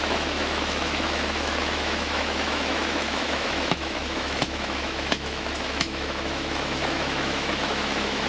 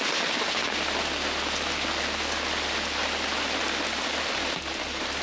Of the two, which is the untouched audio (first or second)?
second